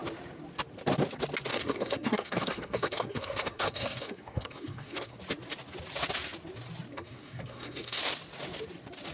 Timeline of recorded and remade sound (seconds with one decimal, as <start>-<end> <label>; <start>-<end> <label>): 0.0-1.5 recorded; 1.5-5.2 remade; 5.2-6.9 recorded; 6.9-8.0 remade; 8.0-9.1 recorded

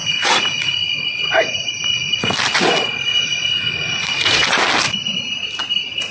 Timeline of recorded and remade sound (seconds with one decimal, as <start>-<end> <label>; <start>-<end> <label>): 0.0-2.3 remade; 2.3-3.1 recorded; 3.1-4.6 remade; 4.6-6.1 recorded

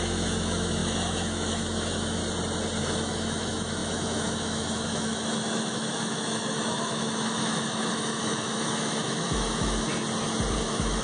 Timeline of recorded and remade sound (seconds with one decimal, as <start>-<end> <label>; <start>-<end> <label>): 0.0-2.2 remade; 2.2-2.8 recorded; 2.8-9.9 remade; 9.9-10.6 recorded; 10.6-11.0 remade

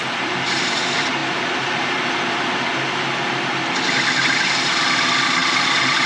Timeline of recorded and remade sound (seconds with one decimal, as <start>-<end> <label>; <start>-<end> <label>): 0.0-6.1 recorded

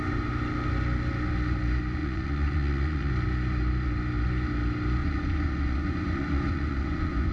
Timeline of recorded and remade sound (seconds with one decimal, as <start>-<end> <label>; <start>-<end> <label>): 0.0-2.0 recorded; 2.0-3.1 remade; 3.1-5.0 recorded; 5.0-7.3 remade

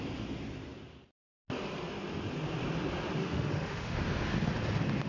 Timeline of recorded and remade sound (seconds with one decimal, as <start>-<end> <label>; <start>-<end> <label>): 0.0-3.2 recorded; 3.2-4.0 remade; 4.0-5.1 recorded

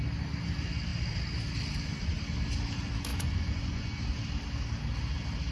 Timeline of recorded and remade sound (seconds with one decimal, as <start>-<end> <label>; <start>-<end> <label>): 0.0-3.1 recorded; 3.1-4.0 remade; 4.0-5.5 recorded